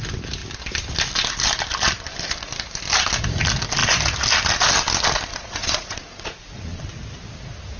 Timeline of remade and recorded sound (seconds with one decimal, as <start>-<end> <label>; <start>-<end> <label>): 0.0-5.3 recorded; 5.3-6.9 remade; 6.9-7.8 recorded